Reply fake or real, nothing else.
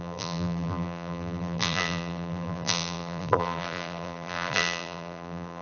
fake